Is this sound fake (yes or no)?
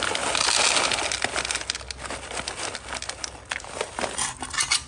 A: no